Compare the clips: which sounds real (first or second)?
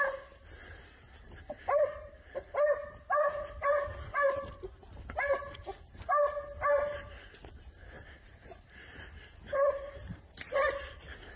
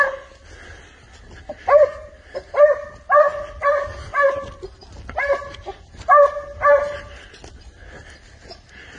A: second